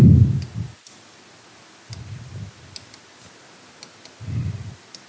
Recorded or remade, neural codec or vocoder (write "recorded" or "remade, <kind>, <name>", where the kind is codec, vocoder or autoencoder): recorded